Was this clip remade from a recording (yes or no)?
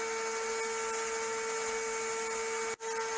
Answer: no